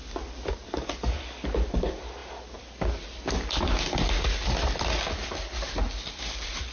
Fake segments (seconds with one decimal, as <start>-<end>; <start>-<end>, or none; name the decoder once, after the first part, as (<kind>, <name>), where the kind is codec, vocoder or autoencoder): none